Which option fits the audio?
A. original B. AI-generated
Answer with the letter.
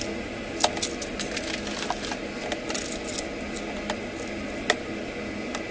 A